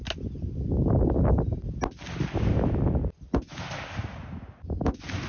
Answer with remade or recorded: recorded